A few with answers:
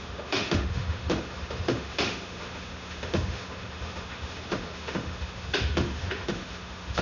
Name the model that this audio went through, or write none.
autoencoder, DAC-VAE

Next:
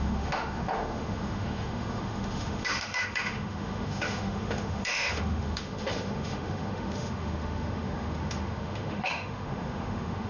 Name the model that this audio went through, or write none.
autoencoder, DAC-VAE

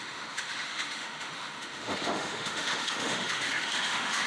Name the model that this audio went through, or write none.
autoencoder, DAC-VAE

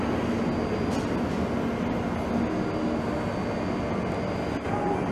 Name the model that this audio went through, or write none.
none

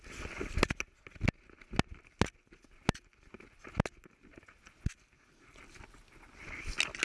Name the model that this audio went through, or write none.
none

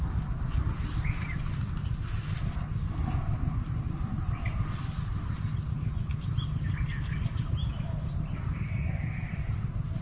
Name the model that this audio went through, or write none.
none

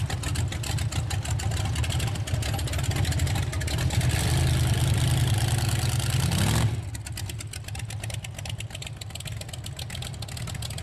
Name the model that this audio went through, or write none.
none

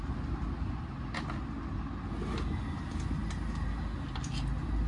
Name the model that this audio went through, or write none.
none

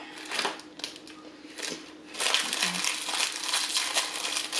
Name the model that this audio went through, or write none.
none